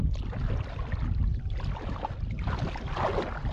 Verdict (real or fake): real